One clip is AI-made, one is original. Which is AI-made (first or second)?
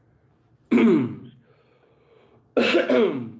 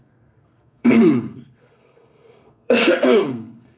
second